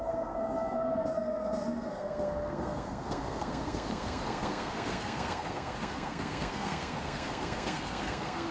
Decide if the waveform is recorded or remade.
remade